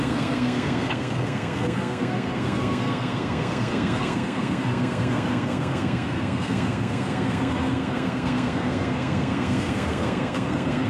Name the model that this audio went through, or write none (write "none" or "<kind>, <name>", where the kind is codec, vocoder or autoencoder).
codec, SNAC